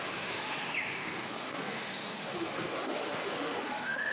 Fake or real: fake